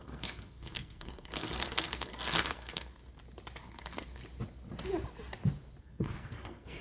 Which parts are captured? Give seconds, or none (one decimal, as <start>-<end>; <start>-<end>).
3.0-3.7; 4.2-5.8